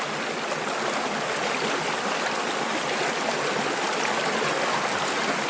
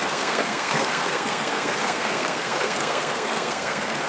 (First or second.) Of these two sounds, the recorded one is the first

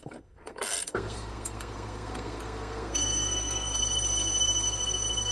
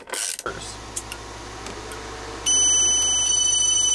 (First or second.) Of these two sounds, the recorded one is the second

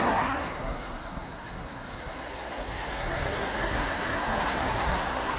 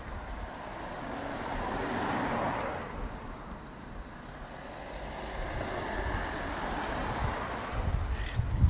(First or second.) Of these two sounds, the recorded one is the second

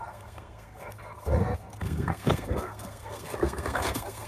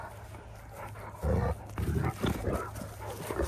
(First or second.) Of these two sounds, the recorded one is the second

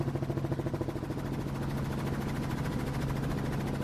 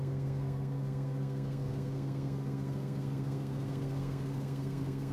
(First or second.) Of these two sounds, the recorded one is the first